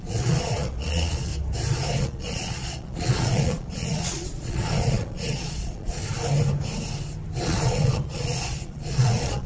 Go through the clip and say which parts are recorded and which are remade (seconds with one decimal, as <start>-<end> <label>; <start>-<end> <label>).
0.0-1.3 remade; 1.3-2.0 recorded; 2.0-6.0 remade; 6.0-7.4 recorded; 7.4-9.5 remade